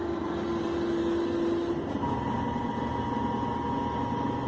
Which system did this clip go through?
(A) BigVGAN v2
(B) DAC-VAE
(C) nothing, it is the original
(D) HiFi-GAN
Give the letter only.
C